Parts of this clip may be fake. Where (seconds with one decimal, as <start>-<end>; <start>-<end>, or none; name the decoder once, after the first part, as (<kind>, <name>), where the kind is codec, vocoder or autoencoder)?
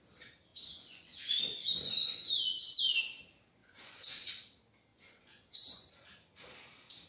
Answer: 0.5-2.8 (vocoder, Vocos); 3.6-4.3; 4.9-5.9